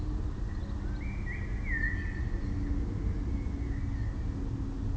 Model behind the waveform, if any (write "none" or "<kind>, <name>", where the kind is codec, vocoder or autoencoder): none